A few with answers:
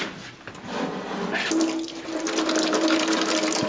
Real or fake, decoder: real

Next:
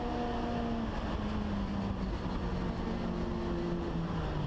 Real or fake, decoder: real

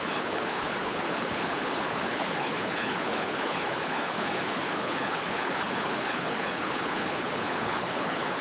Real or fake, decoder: fake, codec, HILCodec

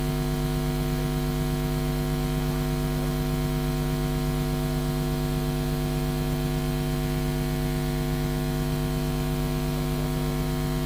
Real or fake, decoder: real